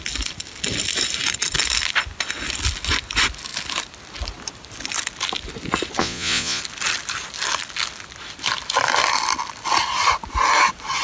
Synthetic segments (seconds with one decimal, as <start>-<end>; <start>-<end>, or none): 6.0-6.6

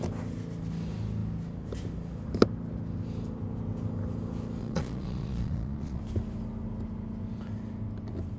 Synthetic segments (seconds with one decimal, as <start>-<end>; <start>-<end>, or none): 4.6-6.0

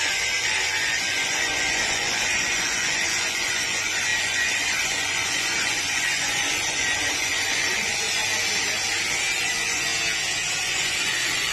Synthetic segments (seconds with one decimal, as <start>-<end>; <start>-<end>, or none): 0.0-8.2; 9.4-9.9; 10.6-11.5

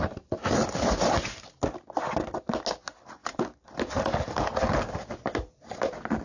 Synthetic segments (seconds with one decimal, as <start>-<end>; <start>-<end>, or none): none

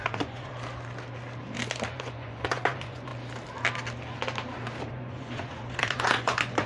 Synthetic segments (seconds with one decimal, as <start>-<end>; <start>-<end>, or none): 0.0-0.5; 1.9-3.1; 4.9-6.7

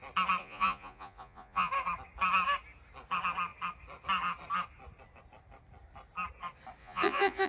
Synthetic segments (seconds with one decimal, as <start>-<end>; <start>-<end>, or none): 0.4-1.7; 6.8-7.5

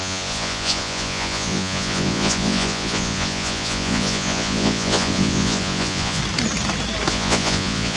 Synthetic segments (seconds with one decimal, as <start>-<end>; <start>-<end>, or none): 0.0-6.2; 7.1-8.0

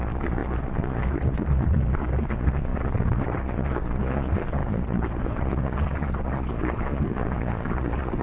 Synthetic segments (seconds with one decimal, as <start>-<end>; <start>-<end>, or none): 0.0-8.2